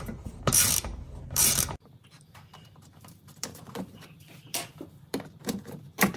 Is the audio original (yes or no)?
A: no